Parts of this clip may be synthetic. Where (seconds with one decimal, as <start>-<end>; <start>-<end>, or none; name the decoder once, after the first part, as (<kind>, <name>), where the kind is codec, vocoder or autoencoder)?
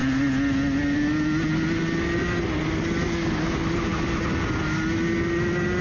none